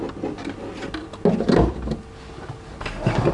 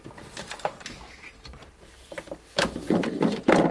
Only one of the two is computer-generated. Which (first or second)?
second